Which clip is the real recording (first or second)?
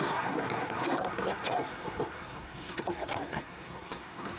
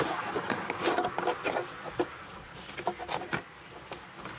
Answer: second